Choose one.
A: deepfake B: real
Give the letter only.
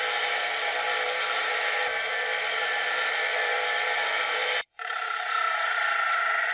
A